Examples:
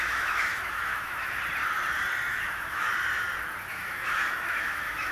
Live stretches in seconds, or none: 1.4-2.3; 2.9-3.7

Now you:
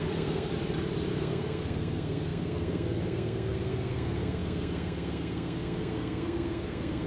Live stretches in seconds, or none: 0.5-1.1

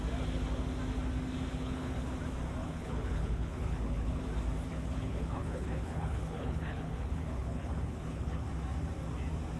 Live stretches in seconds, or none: 0.0-1.5; 2.2-2.6; 4.2-4.7; 8.5-9.6

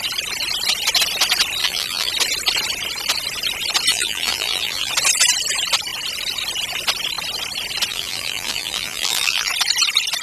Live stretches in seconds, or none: 0.0-1.6; 2.1-3.9; 4.9-7.9; 9.5-10.2

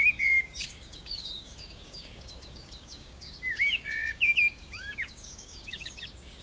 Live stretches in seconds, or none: none

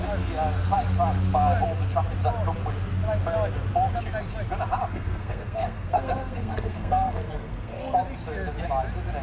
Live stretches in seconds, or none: 0.0-4.9; 7.8-9.2